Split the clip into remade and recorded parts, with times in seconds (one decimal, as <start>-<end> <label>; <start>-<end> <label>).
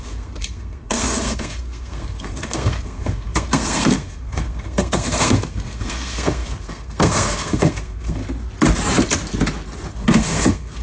0.0-8.2 remade; 8.2-9.9 recorded; 9.9-10.8 remade